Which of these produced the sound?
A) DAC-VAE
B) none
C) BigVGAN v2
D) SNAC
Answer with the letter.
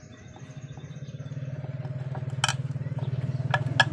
B